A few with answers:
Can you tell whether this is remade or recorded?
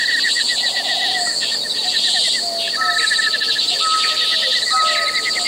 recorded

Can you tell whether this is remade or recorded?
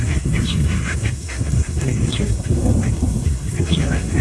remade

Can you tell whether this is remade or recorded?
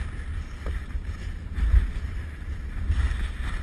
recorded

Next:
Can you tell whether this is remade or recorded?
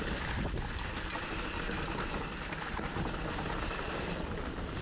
recorded